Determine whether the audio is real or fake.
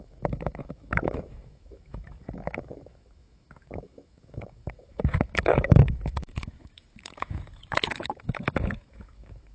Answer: fake